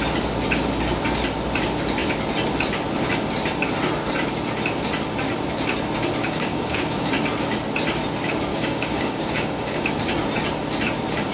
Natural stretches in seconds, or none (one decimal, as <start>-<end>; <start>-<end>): 0.0-6.2; 7.1-8.5; 9.9-11.3